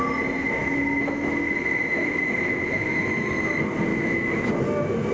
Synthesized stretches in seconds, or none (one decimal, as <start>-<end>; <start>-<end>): 0.6-3.5; 3.9-4.5